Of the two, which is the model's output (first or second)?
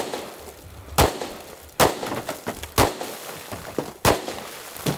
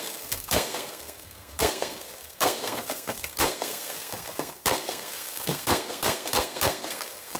second